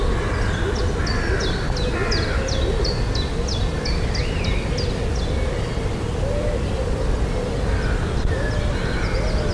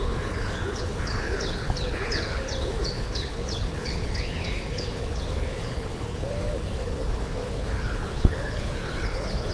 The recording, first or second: first